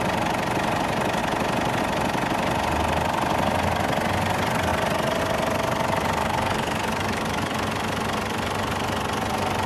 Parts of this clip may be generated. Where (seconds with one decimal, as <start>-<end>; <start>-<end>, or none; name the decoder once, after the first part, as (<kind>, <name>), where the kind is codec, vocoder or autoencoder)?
6.2-7.7 (codec, DAC)